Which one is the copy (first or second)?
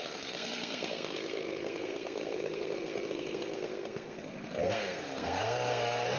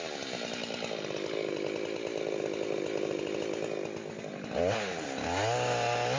first